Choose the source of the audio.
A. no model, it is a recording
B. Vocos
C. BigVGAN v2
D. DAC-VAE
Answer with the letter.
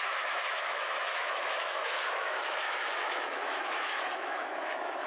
D